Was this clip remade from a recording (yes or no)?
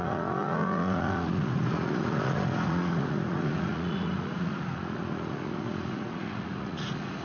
yes